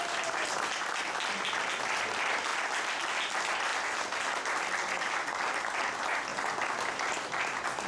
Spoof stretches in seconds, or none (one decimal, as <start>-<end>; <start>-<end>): none